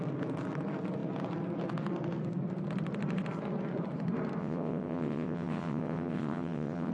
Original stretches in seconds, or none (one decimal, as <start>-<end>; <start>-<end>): 0.0-4.4